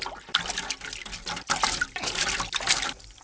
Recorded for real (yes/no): yes